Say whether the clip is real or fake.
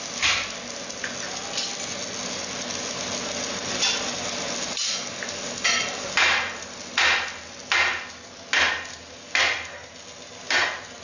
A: real